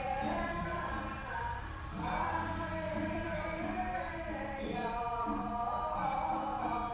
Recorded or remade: remade